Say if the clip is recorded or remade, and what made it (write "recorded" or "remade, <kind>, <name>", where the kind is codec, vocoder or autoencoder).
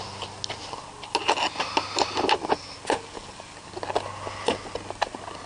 recorded